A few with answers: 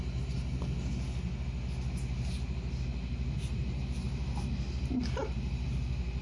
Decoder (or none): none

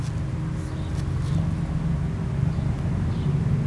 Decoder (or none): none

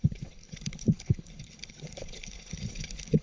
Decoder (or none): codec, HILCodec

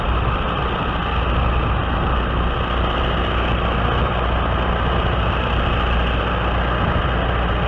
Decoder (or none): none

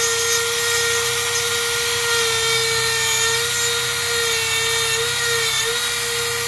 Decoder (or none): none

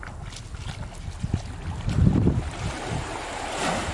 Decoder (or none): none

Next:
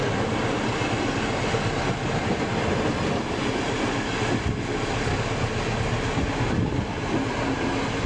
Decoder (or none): none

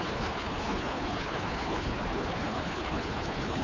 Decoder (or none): codec, HILCodec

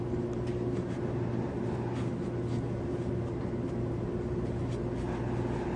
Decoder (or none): none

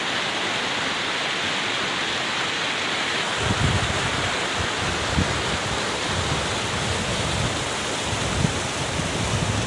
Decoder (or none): none